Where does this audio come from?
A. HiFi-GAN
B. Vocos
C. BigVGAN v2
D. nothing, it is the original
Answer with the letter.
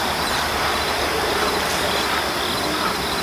C